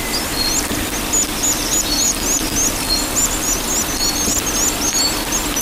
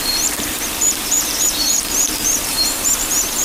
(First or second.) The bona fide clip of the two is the first